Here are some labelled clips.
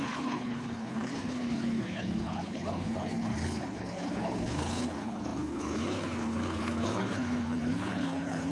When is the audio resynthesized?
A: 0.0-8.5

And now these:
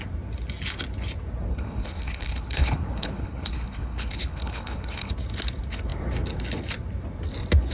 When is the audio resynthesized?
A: 1.5-5.1

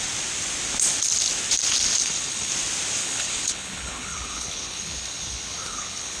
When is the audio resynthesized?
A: 2.0-2.5; 3.0-6.2

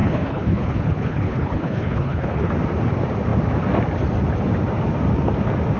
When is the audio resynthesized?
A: 0.0-2.5

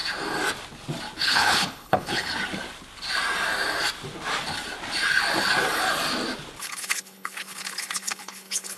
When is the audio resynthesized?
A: 1.2-2.3; 6.6-8.8

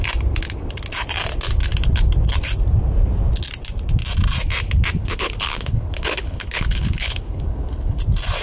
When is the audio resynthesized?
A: 5.0-8.0

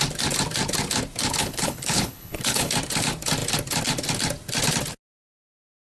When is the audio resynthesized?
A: 1.4-2.7